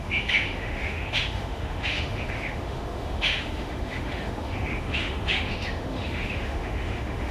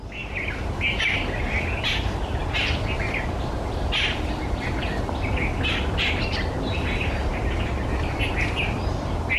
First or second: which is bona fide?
second